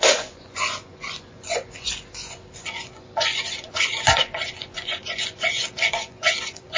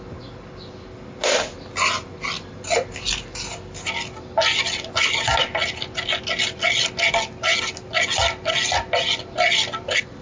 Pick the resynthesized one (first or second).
first